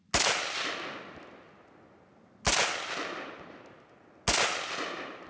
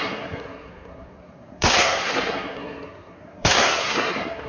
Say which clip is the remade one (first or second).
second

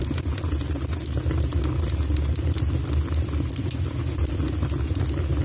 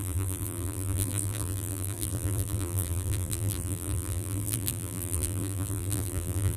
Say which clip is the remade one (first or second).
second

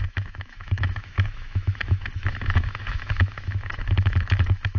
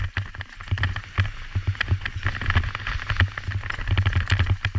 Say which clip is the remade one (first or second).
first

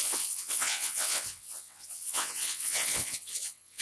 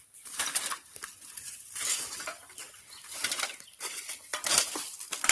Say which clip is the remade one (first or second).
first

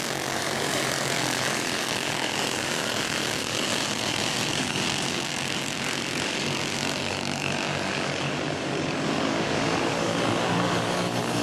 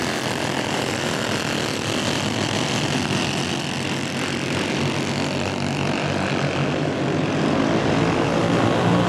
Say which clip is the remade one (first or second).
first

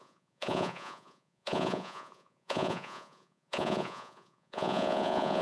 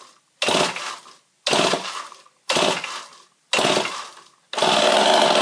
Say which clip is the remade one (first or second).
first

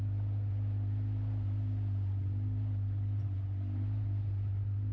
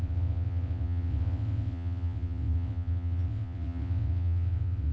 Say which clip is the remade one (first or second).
second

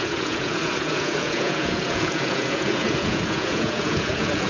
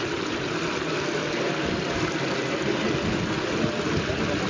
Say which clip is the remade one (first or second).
first